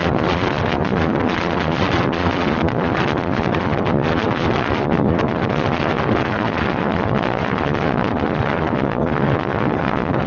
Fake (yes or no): yes